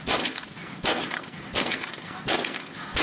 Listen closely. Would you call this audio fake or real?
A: fake